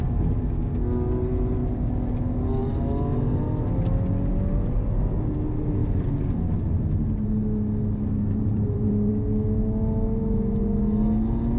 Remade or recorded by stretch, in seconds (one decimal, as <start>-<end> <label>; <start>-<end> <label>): 0.0-5.8 recorded; 5.8-6.3 remade; 6.3-8.2 recorded; 8.2-9.1 remade; 9.1-11.6 recorded